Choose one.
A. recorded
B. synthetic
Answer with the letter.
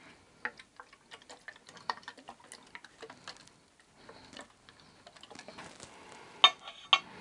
A